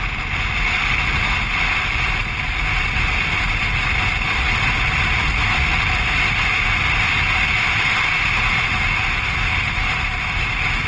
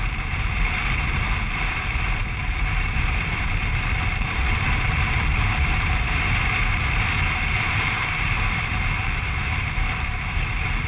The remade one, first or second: second